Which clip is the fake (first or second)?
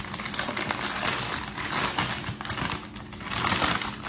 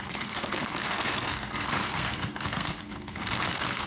second